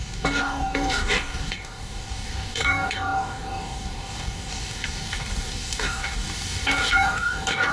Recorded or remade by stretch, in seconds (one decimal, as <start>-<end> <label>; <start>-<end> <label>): 0.0-7.7 remade